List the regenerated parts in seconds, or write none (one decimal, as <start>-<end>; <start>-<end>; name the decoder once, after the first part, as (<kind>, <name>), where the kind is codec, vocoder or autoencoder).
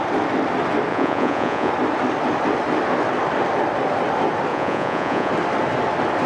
0.9-1.7 (vocoder, Vocos); 4.5-5.3